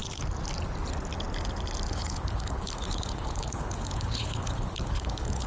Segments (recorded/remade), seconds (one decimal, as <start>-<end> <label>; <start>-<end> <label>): 0.0-1.9 recorded; 1.9-5.5 remade